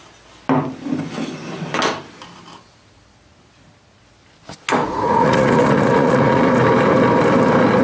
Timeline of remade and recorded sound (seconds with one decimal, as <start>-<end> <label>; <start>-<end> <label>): 0.0-4.8 recorded; 4.8-6.5 remade; 6.5-7.8 recorded